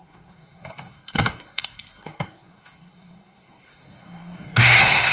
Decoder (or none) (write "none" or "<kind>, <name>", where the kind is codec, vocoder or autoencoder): codec, SNAC